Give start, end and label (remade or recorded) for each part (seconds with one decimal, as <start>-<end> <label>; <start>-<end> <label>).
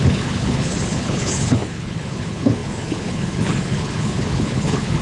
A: 0.0-5.0 remade